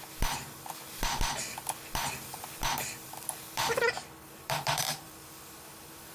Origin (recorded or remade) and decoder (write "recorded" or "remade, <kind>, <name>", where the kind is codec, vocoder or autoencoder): remade, vocoder, BigVGAN v2